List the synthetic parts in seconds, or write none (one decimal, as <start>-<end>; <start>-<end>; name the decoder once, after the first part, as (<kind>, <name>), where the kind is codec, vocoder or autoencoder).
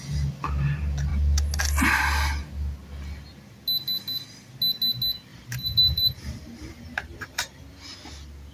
5.3-7.6 (vocoder, BigVGAN v2)